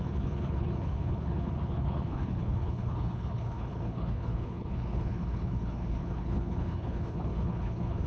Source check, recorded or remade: remade